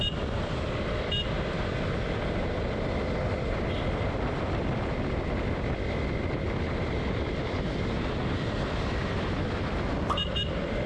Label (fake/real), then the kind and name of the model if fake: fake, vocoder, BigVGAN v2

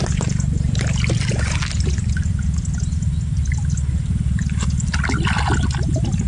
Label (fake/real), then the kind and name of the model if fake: real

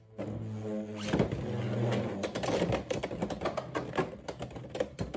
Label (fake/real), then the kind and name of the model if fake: real